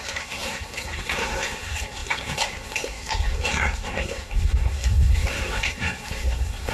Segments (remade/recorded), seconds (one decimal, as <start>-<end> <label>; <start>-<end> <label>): 0.0-6.7 remade